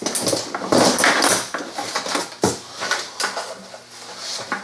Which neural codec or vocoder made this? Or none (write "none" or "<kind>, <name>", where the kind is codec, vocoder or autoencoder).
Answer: none